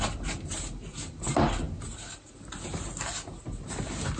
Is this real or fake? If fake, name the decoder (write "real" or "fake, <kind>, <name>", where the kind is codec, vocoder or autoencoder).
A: real